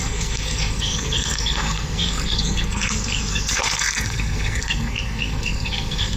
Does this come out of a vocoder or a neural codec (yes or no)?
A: yes